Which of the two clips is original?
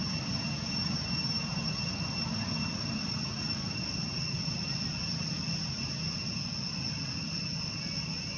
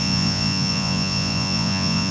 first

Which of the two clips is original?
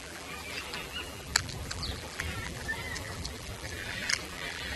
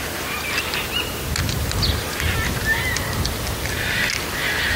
second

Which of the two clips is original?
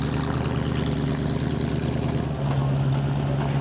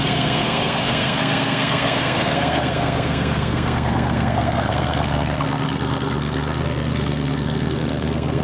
first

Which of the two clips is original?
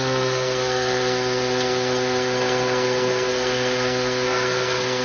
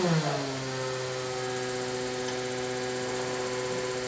second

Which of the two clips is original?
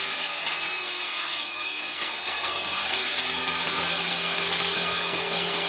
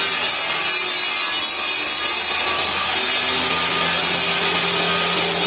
second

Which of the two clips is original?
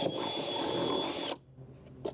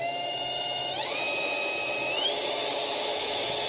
first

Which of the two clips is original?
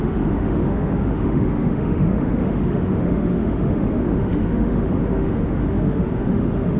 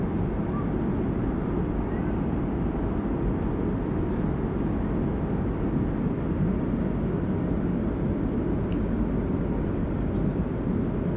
second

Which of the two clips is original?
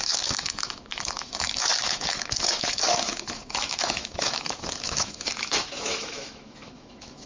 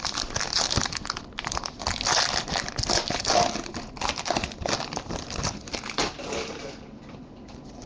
second